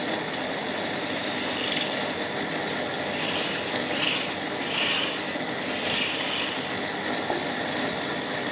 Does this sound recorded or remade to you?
recorded